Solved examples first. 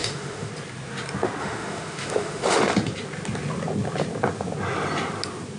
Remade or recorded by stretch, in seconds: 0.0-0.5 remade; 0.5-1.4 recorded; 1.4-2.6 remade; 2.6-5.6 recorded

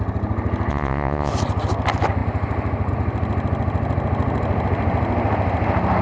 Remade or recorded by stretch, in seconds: 0.0-0.7 recorded; 0.7-1.3 remade; 1.3-6.0 recorded

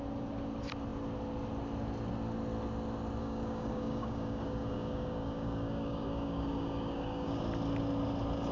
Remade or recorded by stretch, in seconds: 0.0-3.2 recorded; 3.2-7.4 remade; 7.4-8.5 recorded